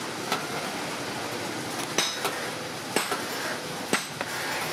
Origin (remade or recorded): recorded